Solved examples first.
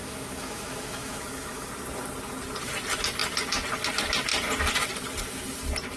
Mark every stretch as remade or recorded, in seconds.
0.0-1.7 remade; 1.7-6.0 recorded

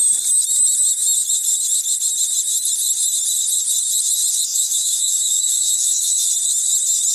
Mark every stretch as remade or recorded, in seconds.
0.0-4.5 recorded; 4.5-6.3 remade; 6.3-7.1 recorded

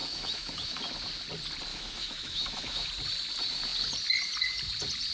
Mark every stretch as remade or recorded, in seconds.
0.0-0.8 remade; 0.8-1.7 recorded; 1.7-2.9 remade; 2.9-5.1 recorded

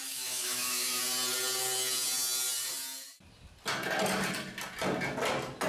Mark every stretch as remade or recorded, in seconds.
0.0-1.0 remade; 1.0-5.7 recorded

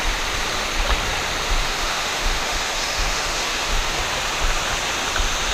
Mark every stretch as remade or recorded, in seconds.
0.0-1.6 recorded; 1.6-4.0 remade; 4.0-5.5 recorded

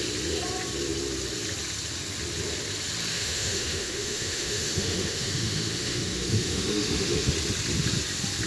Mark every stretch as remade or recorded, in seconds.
0.0-3.1 recorded; 3.1-7.3 remade; 7.3-8.5 recorded